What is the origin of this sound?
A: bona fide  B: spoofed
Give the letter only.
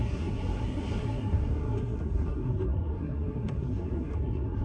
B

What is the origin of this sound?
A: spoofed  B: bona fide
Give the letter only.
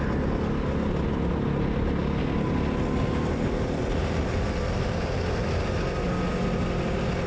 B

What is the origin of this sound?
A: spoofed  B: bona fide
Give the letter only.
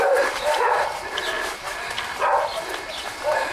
A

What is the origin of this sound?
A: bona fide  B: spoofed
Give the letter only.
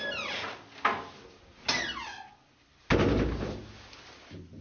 A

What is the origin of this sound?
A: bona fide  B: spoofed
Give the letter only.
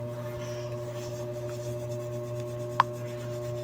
A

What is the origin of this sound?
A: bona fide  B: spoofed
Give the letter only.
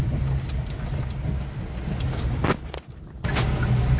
A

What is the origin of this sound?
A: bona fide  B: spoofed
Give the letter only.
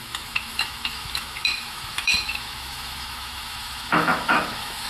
B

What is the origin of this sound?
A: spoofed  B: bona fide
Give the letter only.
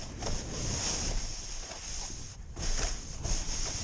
B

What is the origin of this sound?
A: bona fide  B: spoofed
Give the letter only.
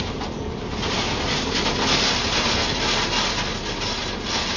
A